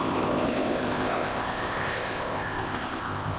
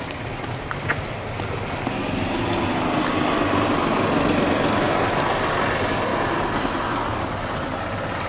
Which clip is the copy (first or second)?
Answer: first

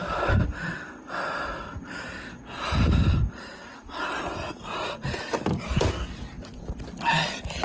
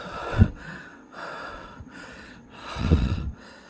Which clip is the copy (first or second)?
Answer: second